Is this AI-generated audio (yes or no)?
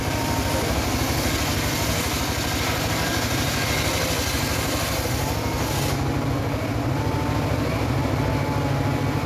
no